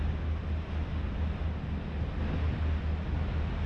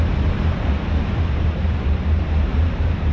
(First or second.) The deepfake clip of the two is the second